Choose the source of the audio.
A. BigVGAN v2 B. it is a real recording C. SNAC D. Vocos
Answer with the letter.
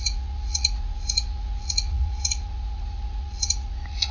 D